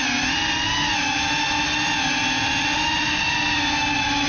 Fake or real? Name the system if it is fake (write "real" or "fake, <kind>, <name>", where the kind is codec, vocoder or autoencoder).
real